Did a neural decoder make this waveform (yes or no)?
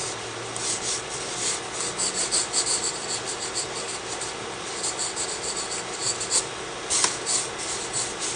no